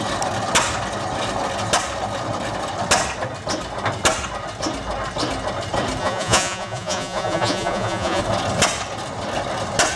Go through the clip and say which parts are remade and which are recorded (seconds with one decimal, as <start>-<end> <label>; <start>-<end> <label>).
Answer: 0.0-6.0 recorded; 6.0-8.2 remade; 8.2-10.0 recorded